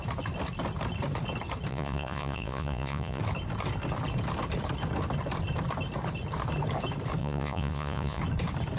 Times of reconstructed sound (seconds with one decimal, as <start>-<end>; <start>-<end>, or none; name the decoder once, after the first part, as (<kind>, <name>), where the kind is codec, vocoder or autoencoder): 1.7-3.2 (vocoder, Vocos); 7.2-8.2